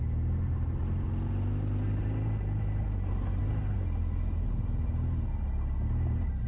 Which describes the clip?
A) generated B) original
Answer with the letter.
B